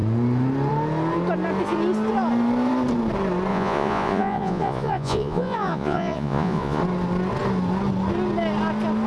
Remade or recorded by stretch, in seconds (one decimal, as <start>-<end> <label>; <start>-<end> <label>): 0.0-3.5 recorded; 3.5-6.8 remade; 6.8-9.1 recorded